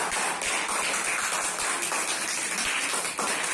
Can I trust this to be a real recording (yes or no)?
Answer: yes